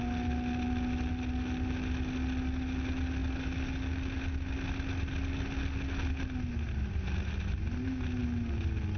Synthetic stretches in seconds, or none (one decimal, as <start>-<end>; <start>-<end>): none